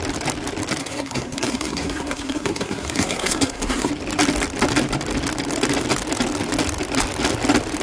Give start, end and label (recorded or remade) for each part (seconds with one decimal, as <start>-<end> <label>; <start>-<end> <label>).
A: 0.0-0.8 recorded; 0.8-3.9 remade; 3.9-7.8 recorded